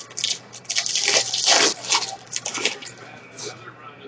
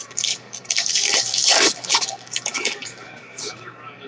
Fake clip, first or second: second